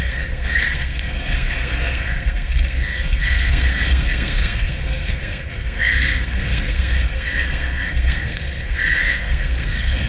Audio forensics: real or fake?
fake